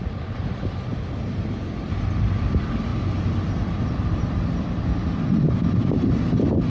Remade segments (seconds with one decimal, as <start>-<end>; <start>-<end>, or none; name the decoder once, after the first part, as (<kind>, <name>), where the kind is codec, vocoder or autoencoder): none